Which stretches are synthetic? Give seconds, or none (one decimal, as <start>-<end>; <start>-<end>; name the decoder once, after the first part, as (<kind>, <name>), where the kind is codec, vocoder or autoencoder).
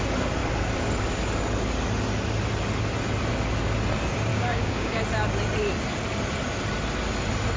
4.3-5.0 (codec, DAC)